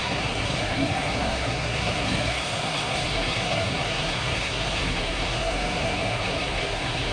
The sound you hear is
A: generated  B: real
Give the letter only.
A